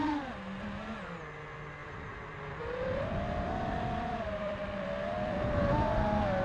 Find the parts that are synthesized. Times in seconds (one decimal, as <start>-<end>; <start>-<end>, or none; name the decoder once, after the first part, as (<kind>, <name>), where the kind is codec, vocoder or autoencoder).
1.8-5.6 (vocoder, BigVGAN v2)